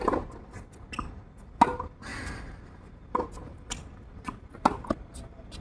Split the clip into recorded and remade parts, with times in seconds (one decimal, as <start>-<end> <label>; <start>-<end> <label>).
0.0-5.6 recorded